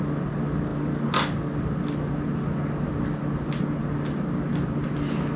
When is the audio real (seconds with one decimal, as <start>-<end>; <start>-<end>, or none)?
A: 0.0-5.4